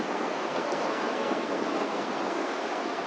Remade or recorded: remade